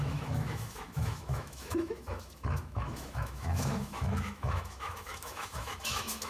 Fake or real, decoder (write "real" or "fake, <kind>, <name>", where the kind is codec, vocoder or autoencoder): fake, autoencoder, DAC-VAE